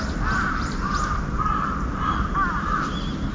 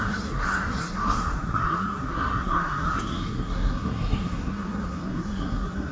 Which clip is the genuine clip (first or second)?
first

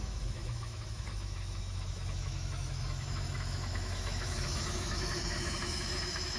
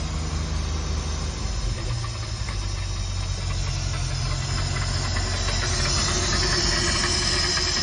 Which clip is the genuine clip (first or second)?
second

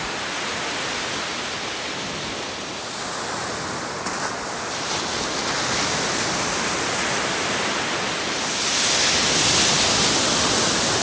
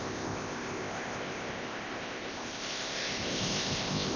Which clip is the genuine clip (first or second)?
first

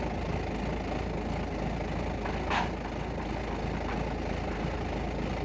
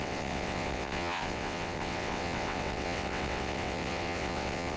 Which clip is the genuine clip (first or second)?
first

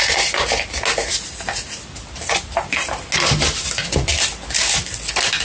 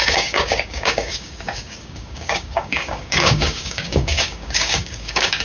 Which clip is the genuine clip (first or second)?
first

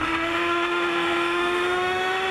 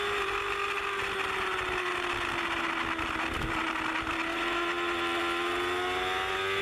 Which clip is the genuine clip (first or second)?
second